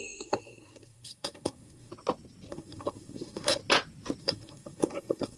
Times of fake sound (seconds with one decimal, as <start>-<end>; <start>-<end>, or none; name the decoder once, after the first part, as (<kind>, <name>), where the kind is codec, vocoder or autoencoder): 0.0-1.9 (codec, SNAC); 2.5-3.6; 4.2-5.4